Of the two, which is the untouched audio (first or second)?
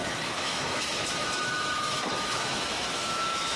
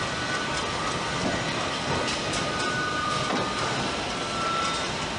second